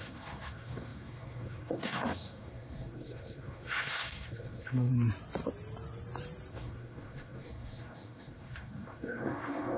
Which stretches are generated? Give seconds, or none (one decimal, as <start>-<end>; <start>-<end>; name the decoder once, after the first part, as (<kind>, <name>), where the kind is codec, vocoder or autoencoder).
0.0-4.9 (codec, SNAC); 6.5-9.8